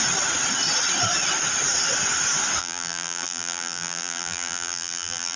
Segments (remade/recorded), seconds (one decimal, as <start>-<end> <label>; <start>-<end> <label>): 0.0-2.6 recorded; 2.6-5.4 remade